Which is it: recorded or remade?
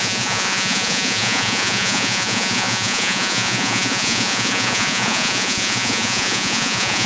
remade